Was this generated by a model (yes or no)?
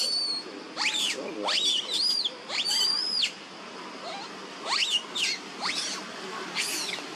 yes